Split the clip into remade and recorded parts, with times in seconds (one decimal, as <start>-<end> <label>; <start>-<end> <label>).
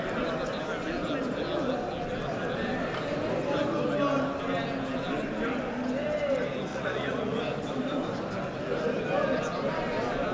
0.0-6.7 recorded; 6.7-7.4 remade; 7.4-10.3 recorded